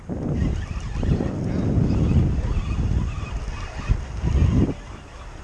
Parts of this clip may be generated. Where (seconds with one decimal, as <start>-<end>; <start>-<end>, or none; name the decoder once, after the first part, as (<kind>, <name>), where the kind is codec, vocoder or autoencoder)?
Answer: none